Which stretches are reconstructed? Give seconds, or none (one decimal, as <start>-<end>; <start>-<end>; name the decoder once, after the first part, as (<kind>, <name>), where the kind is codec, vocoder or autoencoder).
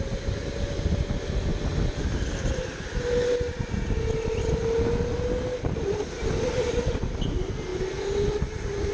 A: none